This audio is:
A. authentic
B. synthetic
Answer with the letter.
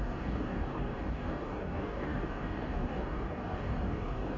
B